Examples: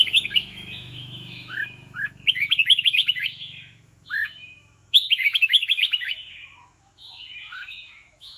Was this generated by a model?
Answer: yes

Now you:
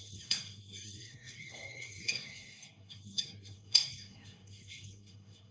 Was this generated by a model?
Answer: yes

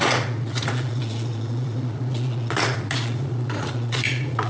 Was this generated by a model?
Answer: yes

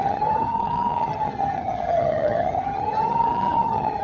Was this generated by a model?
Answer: yes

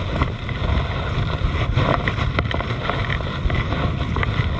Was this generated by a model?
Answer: no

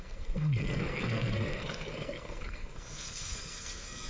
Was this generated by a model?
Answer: yes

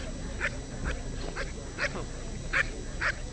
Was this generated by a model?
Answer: no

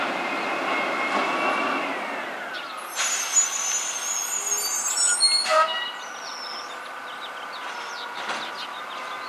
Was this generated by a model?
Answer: no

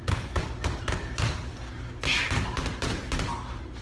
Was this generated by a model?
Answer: no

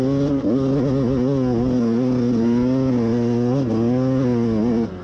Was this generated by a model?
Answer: no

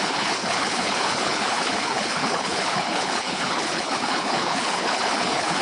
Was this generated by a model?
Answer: yes